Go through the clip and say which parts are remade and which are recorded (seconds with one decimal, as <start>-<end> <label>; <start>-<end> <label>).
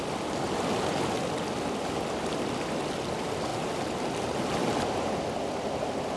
0.0-6.2 recorded